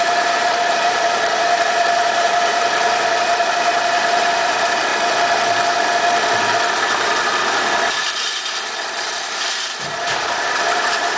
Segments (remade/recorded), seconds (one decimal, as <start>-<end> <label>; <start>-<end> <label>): 0.0-4.9 remade; 4.9-7.9 recorded; 7.9-11.2 remade